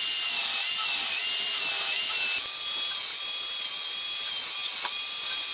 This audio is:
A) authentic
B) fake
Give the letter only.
A